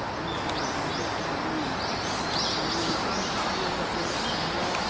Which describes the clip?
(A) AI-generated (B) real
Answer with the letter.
B